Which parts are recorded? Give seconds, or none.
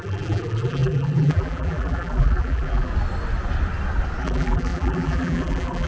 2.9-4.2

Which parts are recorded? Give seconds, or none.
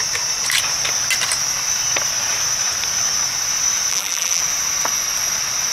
0.0-3.9; 4.4-5.7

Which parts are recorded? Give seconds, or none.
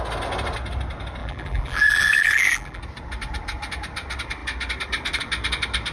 0.0-1.2; 2.8-5.9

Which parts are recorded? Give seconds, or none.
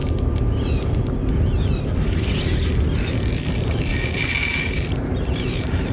0.0-3.5; 3.9-4.7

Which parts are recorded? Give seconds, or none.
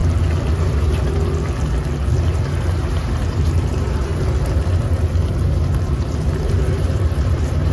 0.0-2.4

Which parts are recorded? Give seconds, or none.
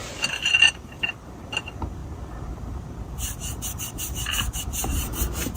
none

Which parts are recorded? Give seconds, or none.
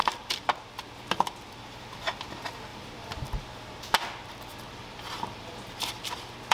0.7-2.7; 3.4-4.5; 6.0-6.5